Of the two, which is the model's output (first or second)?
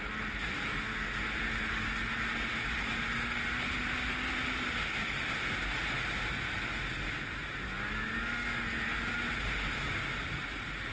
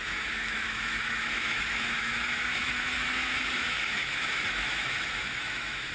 second